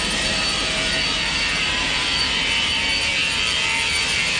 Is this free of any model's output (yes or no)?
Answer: no